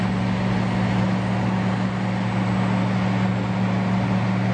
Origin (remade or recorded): recorded